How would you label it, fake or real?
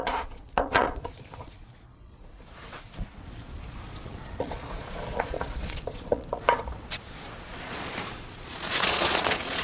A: fake